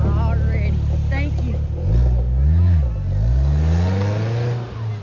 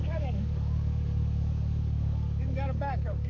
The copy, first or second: second